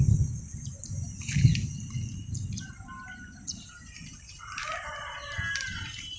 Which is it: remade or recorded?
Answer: remade